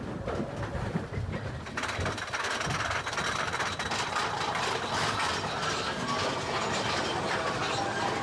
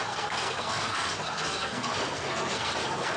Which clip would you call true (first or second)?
first